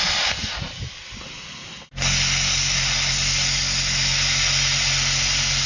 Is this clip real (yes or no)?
yes